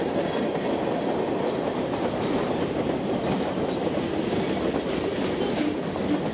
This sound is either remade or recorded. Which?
recorded